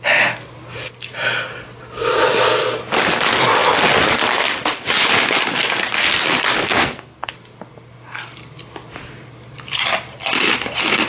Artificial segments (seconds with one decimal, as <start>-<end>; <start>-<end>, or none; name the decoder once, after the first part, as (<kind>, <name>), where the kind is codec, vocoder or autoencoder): 6.6-7.3 (codec, SNAC)